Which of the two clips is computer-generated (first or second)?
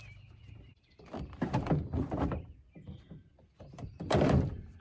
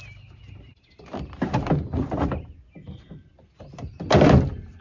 first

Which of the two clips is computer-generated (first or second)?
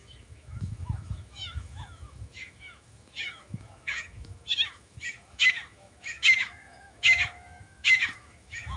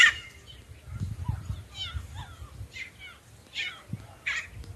first